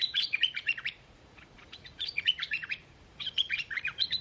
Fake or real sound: fake